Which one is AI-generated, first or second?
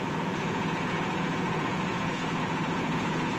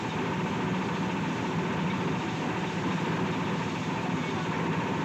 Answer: first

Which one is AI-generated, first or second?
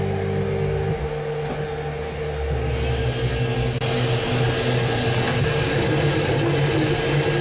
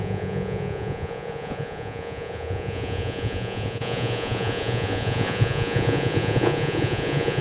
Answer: second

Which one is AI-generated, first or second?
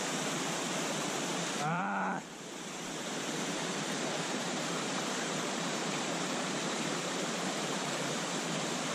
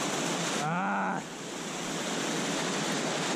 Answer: first